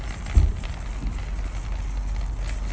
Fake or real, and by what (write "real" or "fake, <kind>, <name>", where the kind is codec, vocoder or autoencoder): real